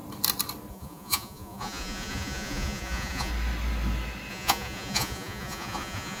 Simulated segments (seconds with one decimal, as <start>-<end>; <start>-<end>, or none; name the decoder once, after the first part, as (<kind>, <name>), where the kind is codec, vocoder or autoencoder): 0.7-3.3 (vocoder, Vocos); 4.3-6.2